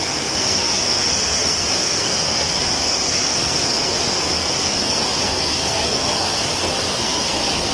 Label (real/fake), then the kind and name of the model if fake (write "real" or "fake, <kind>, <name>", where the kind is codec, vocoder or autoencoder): fake, codec, SNAC